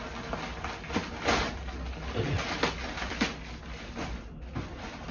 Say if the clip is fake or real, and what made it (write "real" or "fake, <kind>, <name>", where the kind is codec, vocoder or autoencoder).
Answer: real